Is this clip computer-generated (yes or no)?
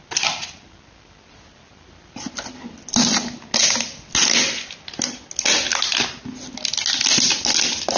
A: no